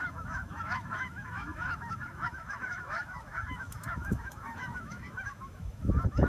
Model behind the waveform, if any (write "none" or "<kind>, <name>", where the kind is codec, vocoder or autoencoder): autoencoder, DAC-VAE